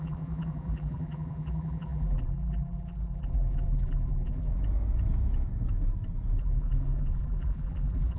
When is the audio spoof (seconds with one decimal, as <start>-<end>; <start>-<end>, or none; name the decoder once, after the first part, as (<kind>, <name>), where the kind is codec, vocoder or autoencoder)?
0.0-4.5 (vocoder, BigVGAN v2); 6.4-8.2